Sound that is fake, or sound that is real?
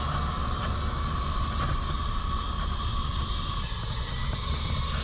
real